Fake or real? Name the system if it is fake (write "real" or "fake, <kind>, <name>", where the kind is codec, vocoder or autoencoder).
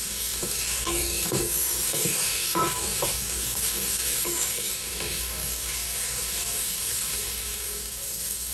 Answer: fake, codec, DAC